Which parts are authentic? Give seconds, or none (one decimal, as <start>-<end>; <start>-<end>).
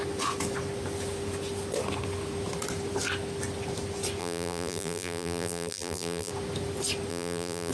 0.0-4.2; 6.3-7.1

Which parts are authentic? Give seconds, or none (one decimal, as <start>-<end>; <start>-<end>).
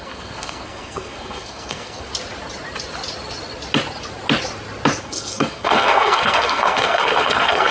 2.1-5.0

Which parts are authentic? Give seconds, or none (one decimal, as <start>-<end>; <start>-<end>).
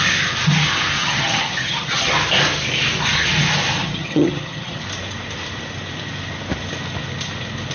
0.0-1.0; 2.1-3.8; 4.8-7.7